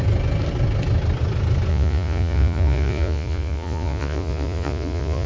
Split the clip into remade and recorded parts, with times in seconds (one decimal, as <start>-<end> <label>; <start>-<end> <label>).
0.0-1.7 recorded; 1.7-5.3 remade